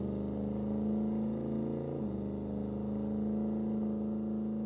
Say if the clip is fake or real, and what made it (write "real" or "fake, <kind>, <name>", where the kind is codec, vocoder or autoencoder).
real